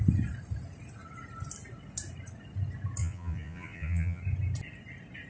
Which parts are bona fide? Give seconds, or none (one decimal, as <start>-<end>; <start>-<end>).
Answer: 0.0-3.0; 4.2-5.3